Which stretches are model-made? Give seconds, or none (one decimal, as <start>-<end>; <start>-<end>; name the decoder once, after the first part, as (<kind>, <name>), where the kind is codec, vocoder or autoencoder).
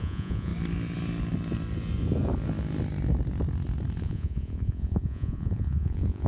0.0-0.5 (vocoder, Vocos); 4.0-6.3